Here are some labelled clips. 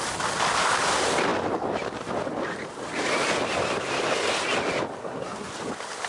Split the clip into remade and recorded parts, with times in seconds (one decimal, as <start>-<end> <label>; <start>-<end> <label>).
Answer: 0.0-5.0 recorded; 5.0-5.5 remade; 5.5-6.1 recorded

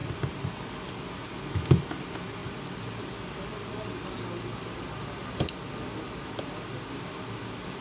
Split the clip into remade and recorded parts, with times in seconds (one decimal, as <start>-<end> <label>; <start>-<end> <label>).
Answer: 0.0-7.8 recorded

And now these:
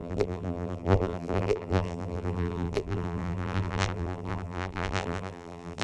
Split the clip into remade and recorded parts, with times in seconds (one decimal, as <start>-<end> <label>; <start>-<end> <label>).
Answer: 0.0-5.8 remade

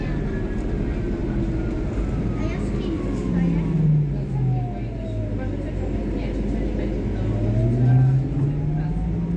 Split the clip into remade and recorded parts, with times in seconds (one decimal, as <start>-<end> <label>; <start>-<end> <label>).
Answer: 0.0-9.4 recorded